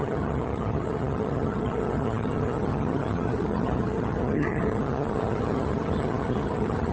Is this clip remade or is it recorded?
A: remade